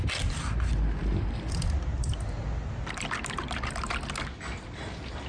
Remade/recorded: recorded